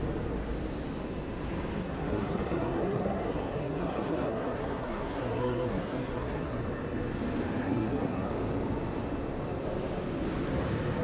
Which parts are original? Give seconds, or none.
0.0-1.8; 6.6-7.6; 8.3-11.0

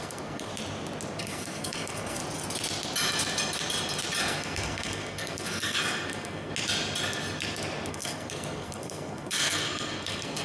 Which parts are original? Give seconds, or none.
0.5-1.2; 2.2-4.2; 6.5-7.9